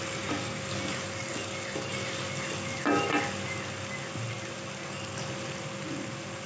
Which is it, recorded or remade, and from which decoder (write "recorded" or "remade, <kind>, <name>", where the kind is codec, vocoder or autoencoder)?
recorded